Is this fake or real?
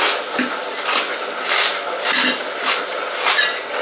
real